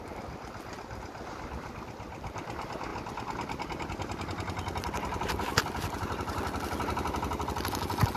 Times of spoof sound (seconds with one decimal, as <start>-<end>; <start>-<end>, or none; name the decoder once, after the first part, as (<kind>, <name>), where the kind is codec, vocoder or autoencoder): none